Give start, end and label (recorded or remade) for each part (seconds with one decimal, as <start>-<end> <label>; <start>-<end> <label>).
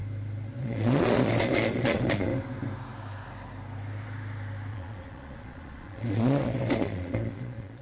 0.0-0.6 recorded; 0.6-2.3 remade; 2.3-4.7 recorded; 4.7-7.8 remade